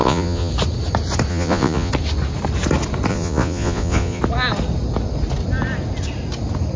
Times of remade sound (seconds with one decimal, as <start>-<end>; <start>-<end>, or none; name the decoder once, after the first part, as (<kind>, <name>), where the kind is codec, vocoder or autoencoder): 0.0-0.5 (vocoder, Vocos); 1.3-1.9; 3.1-4.2